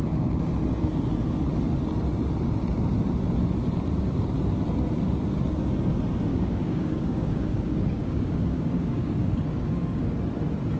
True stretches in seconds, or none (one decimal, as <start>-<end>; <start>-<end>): 0.0-6.3; 10.1-10.8

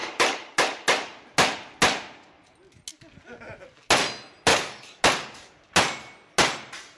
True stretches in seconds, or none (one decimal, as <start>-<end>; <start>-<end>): 0.0-4.5; 5.0-7.0